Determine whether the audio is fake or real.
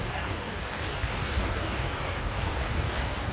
fake